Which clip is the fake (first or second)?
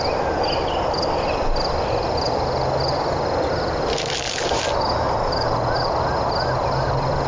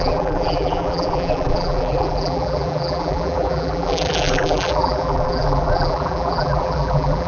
second